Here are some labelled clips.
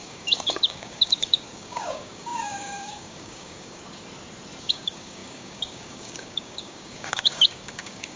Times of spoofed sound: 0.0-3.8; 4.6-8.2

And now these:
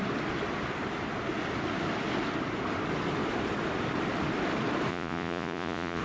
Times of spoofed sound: 4.9-6.0

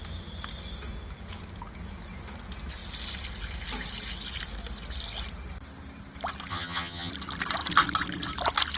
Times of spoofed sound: 6.5-7.1

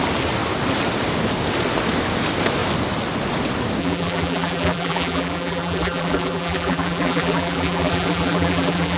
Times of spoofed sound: 3.8-9.0

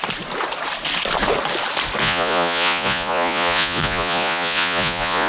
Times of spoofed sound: 2.0-5.3

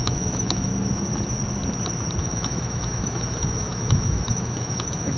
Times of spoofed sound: 0.0-0.7; 2.2-5.2